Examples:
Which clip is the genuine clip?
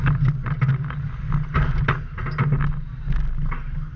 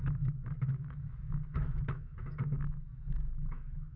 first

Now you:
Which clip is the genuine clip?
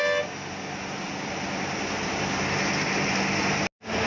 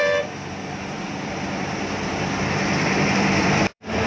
first